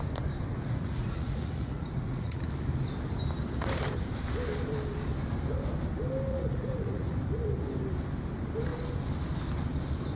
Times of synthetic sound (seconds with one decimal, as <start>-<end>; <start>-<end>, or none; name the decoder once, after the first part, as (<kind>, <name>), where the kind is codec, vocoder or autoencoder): 0.5-2.4 (vocoder, Vocos); 6.3-7.2